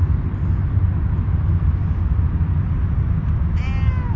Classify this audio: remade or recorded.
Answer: recorded